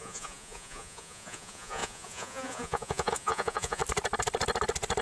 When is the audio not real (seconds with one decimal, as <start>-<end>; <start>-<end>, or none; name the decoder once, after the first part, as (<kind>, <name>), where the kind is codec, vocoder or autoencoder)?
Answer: 0.0-3.8 (vocoder, Vocos)